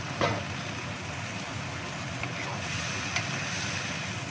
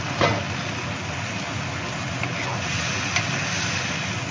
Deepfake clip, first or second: first